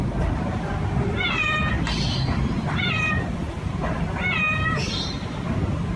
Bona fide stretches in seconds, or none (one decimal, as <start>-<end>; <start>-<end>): none